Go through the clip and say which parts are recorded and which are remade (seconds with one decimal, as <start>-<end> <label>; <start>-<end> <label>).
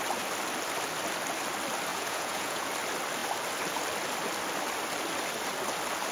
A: 0.0-1.9 recorded; 1.9-2.7 remade; 2.7-6.1 recorded